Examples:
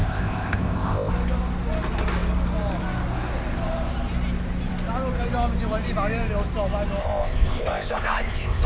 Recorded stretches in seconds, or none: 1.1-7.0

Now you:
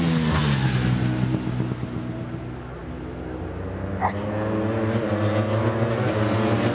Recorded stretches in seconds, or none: 0.0-6.7

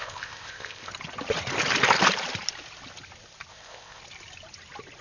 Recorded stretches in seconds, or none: 0.9-3.5; 4.0-5.0

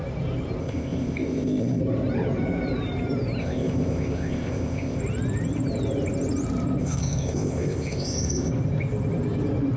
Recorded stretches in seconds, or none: 0.0-0.6; 1.8-3.4; 5.0-6.8; 8.5-9.8

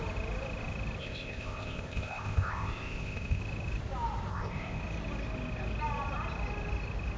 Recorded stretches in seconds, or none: 0.0-1.0; 3.4-4.3; 4.8-7.2

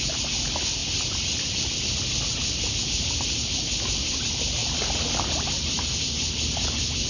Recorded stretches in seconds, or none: 0.0-7.1